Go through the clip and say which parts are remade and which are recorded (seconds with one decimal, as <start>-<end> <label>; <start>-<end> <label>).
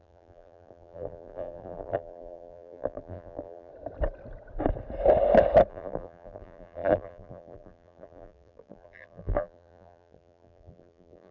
0.0-3.7 remade; 3.7-5.7 recorded; 5.7-11.3 remade